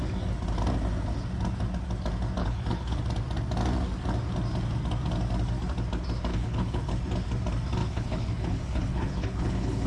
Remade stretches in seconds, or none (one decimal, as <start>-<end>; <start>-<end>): 2.4-3.0; 6.3-6.9; 7.8-9.9